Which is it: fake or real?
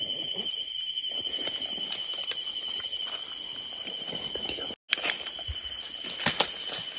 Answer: real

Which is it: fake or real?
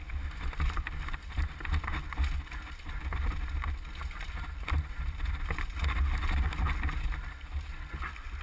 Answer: real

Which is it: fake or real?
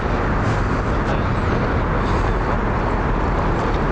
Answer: real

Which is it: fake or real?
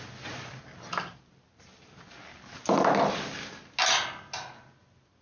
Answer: real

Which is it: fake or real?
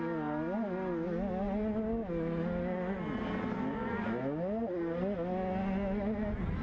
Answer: real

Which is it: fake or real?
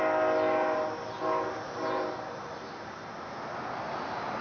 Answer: real